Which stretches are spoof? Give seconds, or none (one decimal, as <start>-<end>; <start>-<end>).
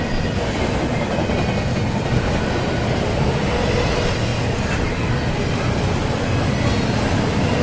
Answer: none